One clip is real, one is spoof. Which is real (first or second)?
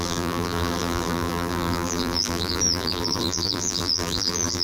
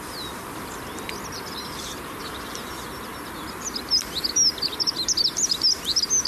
second